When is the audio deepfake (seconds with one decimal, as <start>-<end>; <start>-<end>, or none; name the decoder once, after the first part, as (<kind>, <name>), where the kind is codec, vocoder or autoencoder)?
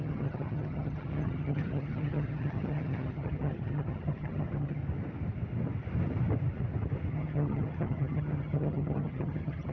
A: 0.0-4.8 (vocoder, HiFi-GAN); 7.1-9.7